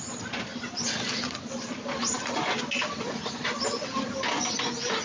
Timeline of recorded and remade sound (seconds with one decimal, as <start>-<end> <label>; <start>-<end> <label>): 0.0-5.0 recorded